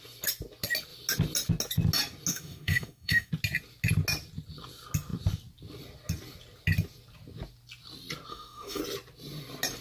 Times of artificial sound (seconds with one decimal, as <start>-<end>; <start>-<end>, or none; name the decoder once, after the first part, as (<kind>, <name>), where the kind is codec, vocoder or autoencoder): 2.3-3.3 (autoencoder, DAC-VAE); 8.3-8.8